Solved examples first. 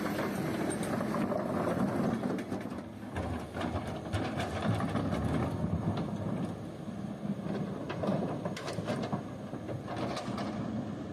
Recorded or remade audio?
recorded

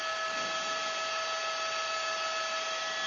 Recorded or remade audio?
recorded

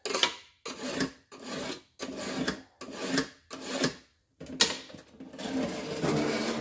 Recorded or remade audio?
recorded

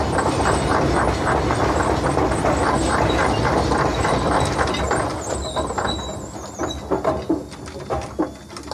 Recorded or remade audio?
recorded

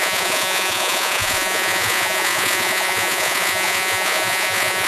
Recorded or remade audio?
remade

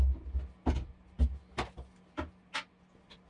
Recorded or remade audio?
recorded